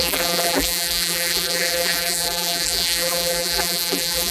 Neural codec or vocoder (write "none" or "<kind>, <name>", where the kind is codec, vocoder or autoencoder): vocoder, BigVGAN v2